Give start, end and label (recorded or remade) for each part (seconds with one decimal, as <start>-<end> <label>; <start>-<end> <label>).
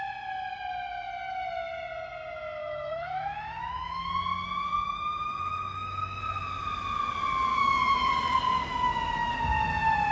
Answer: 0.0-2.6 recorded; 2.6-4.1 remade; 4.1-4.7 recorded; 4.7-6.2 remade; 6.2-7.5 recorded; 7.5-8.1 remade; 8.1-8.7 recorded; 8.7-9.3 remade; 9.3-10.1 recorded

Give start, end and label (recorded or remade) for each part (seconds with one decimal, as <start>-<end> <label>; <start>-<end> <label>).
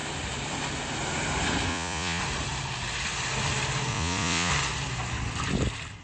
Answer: 0.0-1.7 recorded; 1.7-2.2 remade; 2.2-3.9 recorded; 3.9-4.5 remade; 4.5-6.0 recorded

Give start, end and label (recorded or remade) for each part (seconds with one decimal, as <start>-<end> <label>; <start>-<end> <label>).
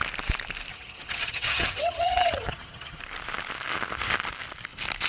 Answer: 0.0-0.7 recorded; 0.7-3.0 remade; 3.0-5.1 recorded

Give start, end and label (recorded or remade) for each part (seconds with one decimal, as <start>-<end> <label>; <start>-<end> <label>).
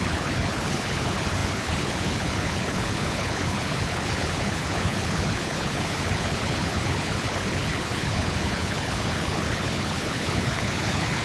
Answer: 0.0-11.2 remade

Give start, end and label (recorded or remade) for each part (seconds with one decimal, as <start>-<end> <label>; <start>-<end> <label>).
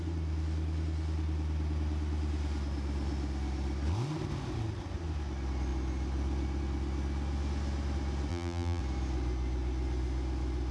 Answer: 0.0-8.3 recorded; 8.3-8.8 remade; 8.8-10.7 recorded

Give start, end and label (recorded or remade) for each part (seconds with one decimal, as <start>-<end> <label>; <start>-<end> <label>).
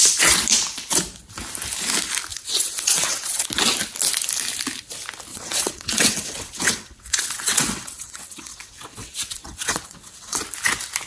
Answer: 0.0-2.3 recorded; 2.3-3.5 remade; 3.5-5.3 recorded; 5.3-10.4 remade; 10.4-11.1 recorded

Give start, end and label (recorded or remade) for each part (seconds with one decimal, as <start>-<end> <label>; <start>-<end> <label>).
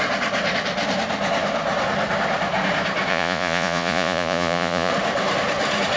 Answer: 0.0-3.1 recorded; 3.1-4.9 remade; 4.9-6.0 recorded